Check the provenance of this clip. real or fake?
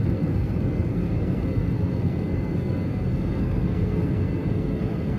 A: fake